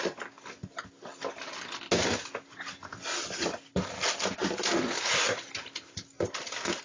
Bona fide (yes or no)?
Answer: yes